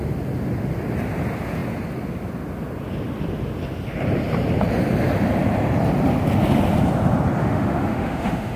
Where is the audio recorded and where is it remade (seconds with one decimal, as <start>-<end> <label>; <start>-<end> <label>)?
0.0-7.4 recorded; 7.4-8.6 remade